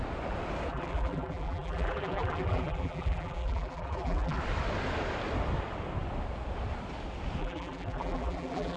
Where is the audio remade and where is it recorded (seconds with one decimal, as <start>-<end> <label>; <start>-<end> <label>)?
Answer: 0.0-0.7 recorded; 0.7-4.4 remade; 4.4-7.4 recorded; 7.4-8.8 remade